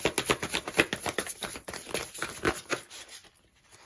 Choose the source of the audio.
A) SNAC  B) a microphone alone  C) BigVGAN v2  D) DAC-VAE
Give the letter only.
B